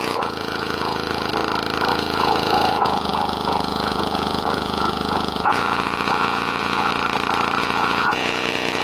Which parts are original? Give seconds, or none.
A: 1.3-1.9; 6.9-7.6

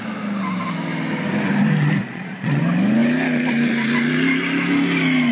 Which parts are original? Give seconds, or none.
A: 0.0-2.0; 2.6-5.3